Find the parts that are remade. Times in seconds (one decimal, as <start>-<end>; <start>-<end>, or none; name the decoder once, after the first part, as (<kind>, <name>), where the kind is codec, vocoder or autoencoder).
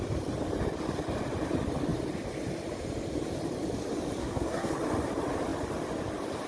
4.2-4.7 (codec, SNAC)